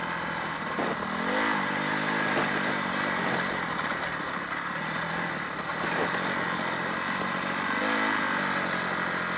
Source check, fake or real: real